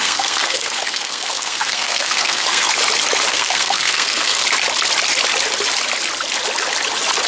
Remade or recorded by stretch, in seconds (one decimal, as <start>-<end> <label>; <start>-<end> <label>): 0.0-2.8 remade; 2.8-3.3 recorded; 3.3-4.4 remade; 4.4-7.3 recorded